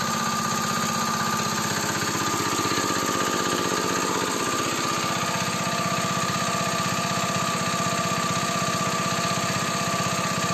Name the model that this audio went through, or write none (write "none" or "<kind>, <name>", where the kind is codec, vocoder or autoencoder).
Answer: none